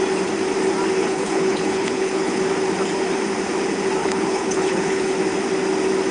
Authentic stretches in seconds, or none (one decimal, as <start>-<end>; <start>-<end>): 0.0-1.0; 2.4-4.0; 5.2-6.1